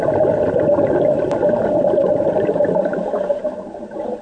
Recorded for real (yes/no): yes